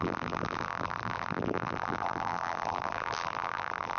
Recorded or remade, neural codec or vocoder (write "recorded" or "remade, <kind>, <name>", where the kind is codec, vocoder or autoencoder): remade, vocoder, BigVGAN v2